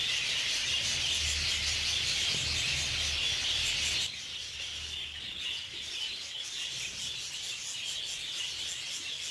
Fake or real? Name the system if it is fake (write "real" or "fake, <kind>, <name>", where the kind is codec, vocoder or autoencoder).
real